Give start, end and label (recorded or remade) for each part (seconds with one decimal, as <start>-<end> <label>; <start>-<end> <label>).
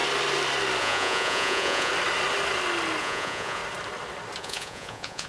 0.0-0.8 recorded; 0.8-1.9 remade; 1.9-3.0 recorded; 3.0-3.6 remade; 3.6-4.4 recorded; 4.4-5.3 remade